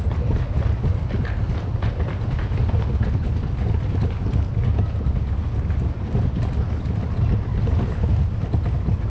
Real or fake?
real